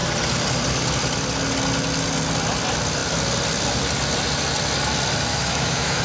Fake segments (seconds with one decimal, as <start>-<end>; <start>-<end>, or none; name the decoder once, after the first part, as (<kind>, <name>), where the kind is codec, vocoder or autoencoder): 5.3-6.0 (autoencoder, DAC-VAE)